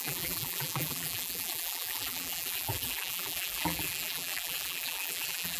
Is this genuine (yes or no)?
no